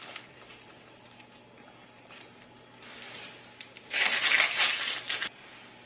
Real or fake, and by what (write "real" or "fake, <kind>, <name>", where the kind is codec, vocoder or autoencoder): real